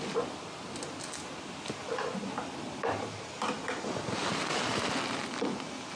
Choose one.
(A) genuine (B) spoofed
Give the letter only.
A